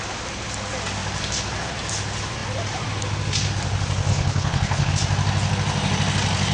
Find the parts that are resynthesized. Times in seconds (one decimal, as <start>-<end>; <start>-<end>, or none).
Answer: 4.1-4.9